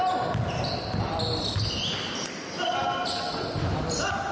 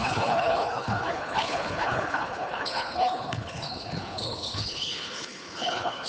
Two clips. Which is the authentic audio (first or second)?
first